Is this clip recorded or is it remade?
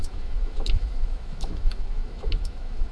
remade